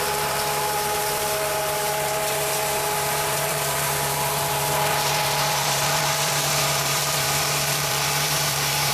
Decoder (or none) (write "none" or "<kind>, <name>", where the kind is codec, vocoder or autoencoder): vocoder, BigVGAN v2